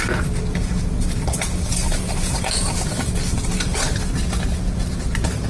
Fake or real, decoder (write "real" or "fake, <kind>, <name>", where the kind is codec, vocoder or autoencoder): real